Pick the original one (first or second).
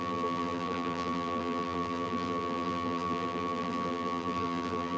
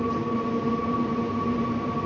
second